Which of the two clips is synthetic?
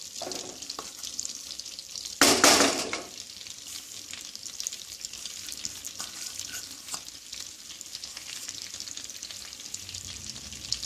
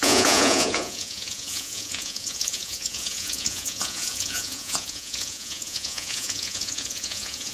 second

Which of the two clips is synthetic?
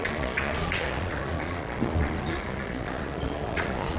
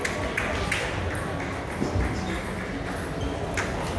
first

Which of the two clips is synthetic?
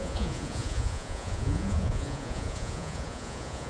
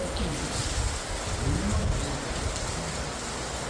first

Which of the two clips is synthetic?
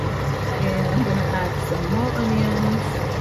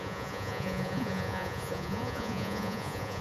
second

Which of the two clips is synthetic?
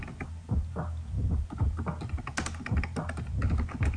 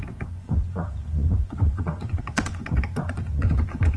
second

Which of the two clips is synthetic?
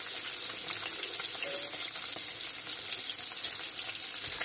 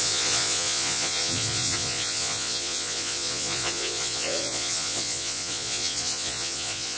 second